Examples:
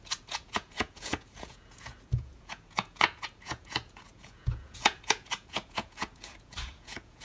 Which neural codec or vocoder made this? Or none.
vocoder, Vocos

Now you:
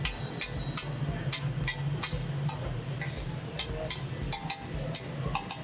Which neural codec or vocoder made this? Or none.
none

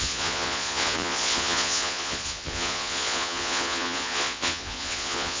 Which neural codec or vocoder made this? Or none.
vocoder, Vocos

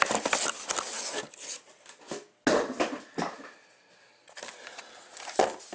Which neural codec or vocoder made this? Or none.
none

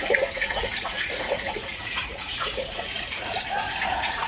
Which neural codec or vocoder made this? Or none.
vocoder, Vocos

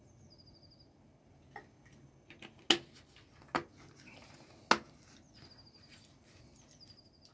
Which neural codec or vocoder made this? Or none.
none